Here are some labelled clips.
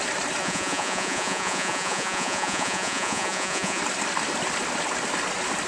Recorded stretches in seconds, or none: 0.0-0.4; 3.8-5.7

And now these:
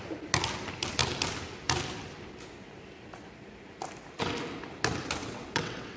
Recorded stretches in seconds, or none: 0.0-5.2

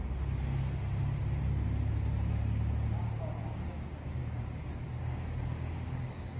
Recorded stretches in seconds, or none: 0.0-3.7; 4.2-5.0

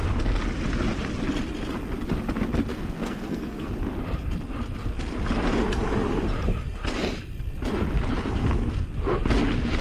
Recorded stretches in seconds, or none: 0.0-2.7; 3.7-9.8

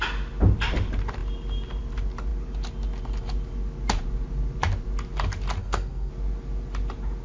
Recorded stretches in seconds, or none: 0.0-5.6; 6.1-7.2

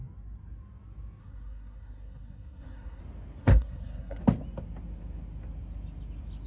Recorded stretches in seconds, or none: 0.0-1.2; 3.0-3.4; 4.2-6.5

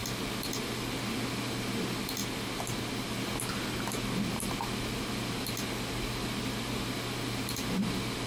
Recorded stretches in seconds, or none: 0.0-8.3

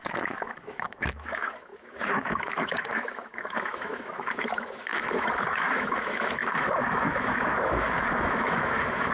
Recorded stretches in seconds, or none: none